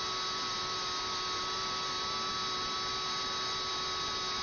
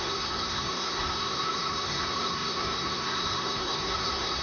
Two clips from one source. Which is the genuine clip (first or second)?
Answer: first